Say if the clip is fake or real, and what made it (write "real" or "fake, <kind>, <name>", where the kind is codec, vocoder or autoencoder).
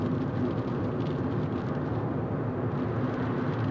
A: real